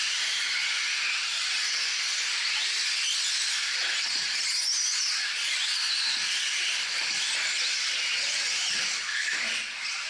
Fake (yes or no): no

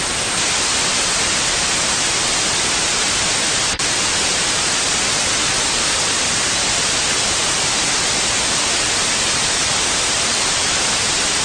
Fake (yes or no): no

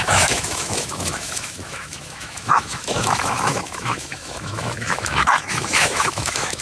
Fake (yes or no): yes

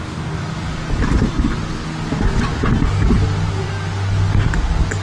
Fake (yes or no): no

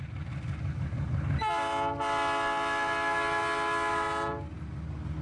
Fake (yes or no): no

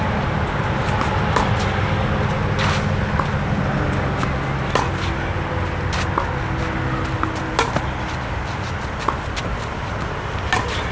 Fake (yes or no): no